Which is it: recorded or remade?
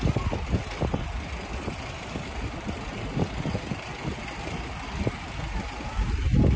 recorded